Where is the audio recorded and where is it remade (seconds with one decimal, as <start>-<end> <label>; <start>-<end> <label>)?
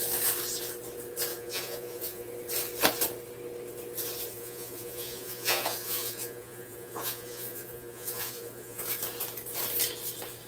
0.0-1.3 recorded; 1.3-2.3 remade; 2.3-4.3 recorded; 4.3-8.8 remade; 8.8-10.5 recorded